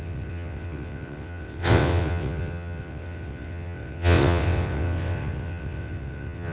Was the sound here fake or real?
fake